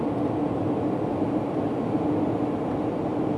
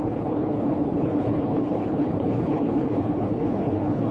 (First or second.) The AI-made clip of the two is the second